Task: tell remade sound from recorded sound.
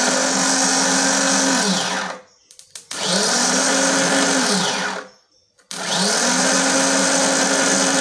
recorded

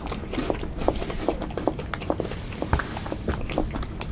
recorded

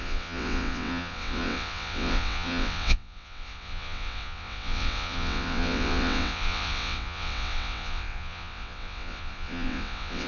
remade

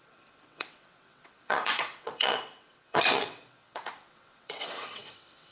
remade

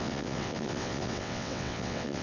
remade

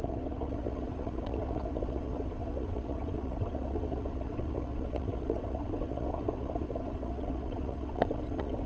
remade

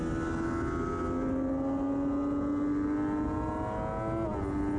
recorded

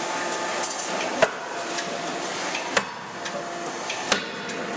recorded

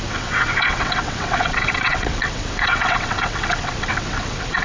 remade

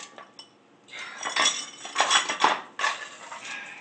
recorded